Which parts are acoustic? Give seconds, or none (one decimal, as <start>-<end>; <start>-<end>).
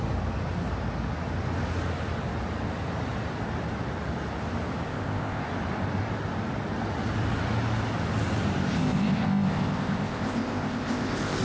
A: 0.0-4.9; 5.4-8.7